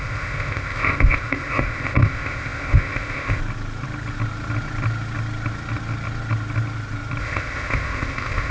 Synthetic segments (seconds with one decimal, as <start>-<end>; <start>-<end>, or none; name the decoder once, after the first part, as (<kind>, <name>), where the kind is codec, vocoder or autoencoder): 0.0-3.4 (codec, ZipCodec); 7.2-8.5